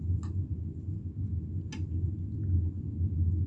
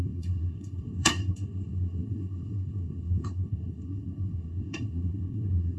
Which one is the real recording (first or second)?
first